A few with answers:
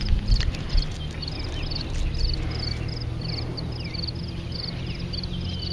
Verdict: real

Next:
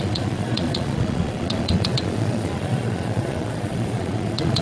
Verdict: fake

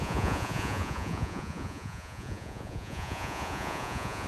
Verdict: fake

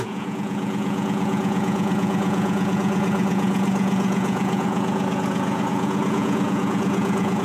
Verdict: fake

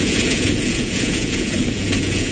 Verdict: fake